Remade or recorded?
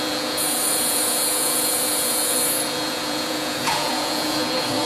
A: remade